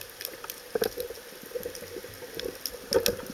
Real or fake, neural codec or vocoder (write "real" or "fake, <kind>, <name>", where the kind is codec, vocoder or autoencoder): real